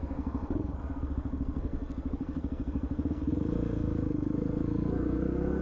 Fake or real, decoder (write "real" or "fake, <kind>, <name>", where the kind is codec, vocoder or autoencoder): fake, codec, SNAC